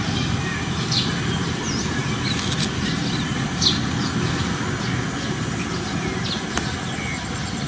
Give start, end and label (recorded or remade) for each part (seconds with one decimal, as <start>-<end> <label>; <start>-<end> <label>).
0.0-7.7 recorded